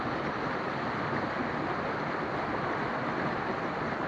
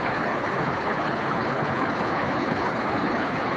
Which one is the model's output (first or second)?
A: second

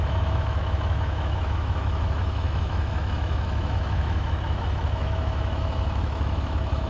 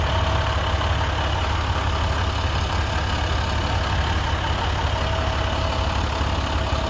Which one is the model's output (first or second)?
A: first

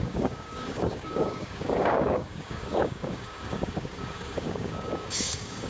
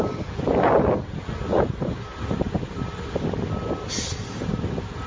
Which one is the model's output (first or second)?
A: first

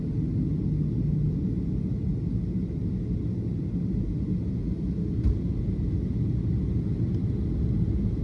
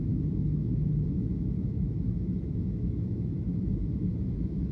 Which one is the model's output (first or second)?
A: second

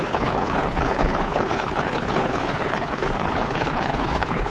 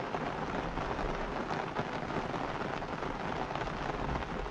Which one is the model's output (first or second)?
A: first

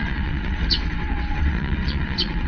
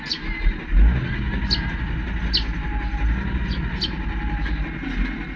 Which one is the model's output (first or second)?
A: first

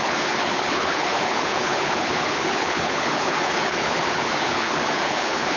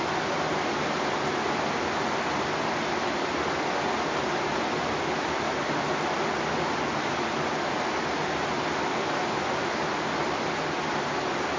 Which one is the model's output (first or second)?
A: first